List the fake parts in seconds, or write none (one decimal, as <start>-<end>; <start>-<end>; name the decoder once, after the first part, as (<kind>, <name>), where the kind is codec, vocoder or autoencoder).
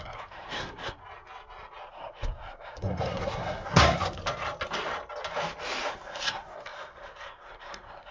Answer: 0.0-1.0 (codec, SNAC); 1.9-4.2; 5.9-8.1